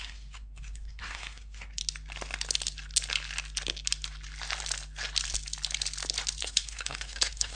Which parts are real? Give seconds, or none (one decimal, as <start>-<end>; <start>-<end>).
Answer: 1.8-6.4